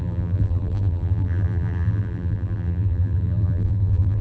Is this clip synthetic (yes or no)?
yes